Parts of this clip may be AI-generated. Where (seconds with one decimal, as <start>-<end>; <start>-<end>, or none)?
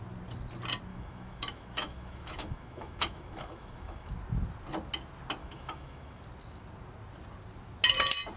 0.9-4.1; 5.4-6.2